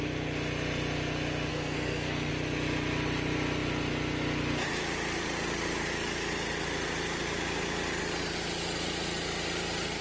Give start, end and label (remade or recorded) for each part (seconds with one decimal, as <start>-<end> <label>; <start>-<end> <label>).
0.0-1.5 recorded; 1.5-2.3 remade; 2.3-10.0 recorded